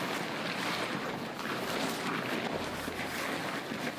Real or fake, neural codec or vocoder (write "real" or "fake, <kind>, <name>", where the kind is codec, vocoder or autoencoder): real